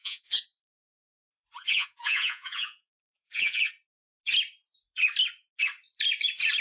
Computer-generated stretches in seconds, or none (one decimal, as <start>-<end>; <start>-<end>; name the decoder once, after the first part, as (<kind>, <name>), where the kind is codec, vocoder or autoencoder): 0.0-3.7 (vocoder, Vocos)